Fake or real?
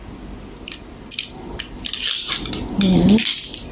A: real